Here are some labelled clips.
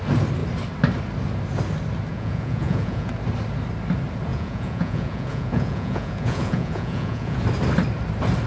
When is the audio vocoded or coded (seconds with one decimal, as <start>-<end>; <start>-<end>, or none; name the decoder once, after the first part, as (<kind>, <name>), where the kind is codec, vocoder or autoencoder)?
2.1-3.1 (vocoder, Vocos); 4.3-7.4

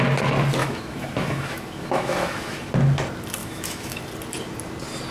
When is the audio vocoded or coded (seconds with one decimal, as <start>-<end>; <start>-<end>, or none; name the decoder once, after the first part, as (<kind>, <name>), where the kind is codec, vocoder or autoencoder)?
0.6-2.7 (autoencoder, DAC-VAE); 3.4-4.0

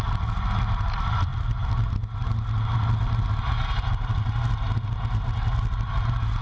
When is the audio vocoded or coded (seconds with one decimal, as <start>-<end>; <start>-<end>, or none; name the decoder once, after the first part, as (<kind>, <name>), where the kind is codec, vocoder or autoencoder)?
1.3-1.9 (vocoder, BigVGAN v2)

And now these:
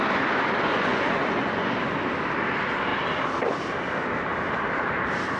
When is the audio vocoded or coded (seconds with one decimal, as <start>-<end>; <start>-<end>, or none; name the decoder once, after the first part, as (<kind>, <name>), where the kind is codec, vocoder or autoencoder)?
0.7-1.7 (vocoder, Vocos)